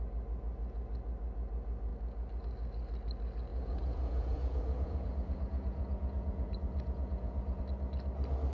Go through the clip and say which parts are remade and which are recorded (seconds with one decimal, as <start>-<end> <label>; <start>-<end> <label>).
0.0-3.5 recorded; 3.5-7.6 remade; 7.6-8.5 recorded